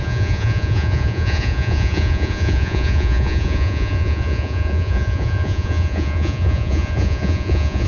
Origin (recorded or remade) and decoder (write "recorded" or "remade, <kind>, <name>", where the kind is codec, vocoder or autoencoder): remade, vocoder, Vocos